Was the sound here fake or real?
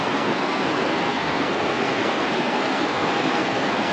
fake